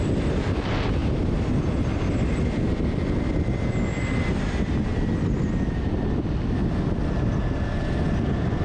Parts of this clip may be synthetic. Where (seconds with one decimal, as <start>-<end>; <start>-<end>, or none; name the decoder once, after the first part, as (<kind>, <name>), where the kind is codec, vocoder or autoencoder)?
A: none